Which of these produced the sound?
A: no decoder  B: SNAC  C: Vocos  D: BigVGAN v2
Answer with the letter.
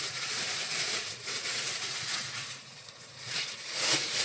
C